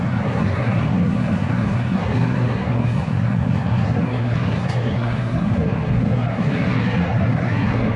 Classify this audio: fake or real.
fake